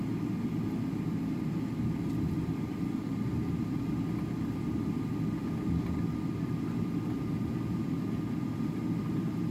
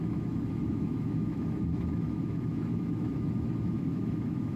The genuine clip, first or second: first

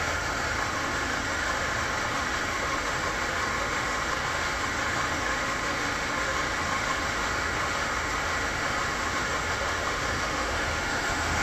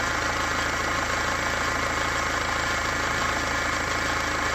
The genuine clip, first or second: second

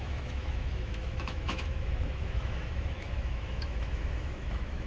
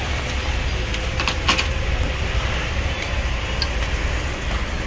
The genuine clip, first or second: second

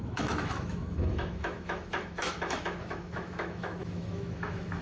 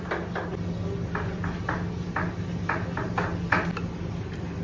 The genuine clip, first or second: second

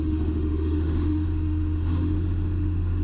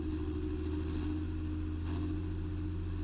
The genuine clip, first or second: second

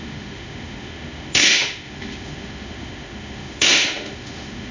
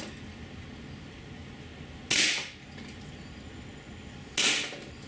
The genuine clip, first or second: second